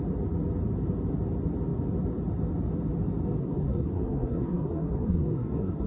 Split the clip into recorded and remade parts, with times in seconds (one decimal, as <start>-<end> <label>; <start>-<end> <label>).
0.0-3.4 recorded; 3.4-5.9 remade